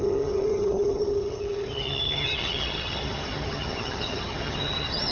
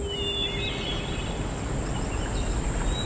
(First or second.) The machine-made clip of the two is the first